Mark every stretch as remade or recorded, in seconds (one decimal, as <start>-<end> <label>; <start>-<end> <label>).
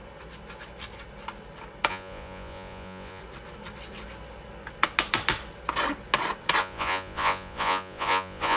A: 0.0-1.9 recorded; 1.9-3.2 remade; 3.2-6.6 recorded; 6.6-8.6 remade